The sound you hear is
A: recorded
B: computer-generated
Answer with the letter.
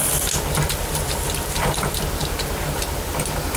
A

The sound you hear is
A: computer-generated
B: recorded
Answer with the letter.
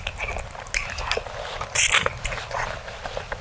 B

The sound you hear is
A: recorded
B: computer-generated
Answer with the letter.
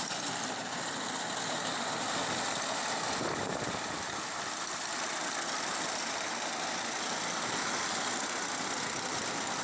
A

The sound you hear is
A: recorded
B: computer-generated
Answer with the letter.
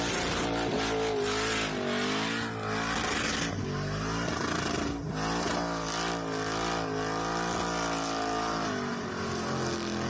A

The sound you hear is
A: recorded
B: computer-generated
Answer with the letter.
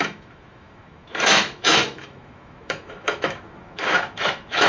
B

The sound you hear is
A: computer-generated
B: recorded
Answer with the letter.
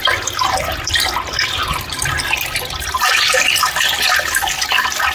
B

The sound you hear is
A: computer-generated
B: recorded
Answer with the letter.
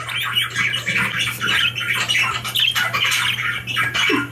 B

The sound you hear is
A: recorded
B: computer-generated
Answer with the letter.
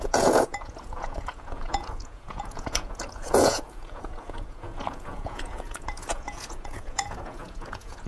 B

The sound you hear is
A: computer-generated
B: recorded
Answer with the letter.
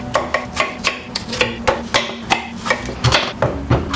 B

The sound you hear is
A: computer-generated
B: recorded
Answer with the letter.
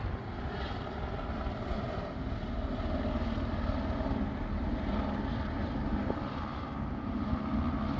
B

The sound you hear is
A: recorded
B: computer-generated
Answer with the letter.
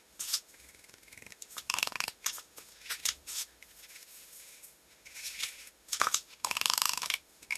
B